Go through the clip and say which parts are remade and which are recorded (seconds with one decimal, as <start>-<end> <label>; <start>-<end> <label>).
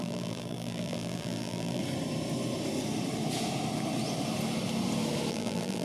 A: 0.0-1.8 remade; 1.8-5.3 recorded; 5.3-5.8 remade